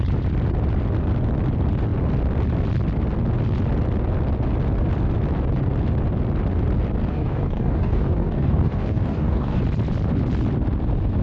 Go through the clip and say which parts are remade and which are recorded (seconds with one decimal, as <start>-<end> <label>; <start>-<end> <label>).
0.0-7.0 recorded; 7.0-9.6 remade; 9.6-11.2 recorded